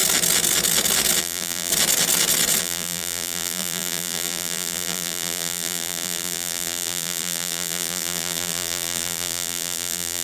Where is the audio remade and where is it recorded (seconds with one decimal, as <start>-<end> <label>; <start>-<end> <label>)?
0.0-1.2 recorded; 1.2-1.7 remade; 1.7-2.6 recorded; 2.6-10.2 remade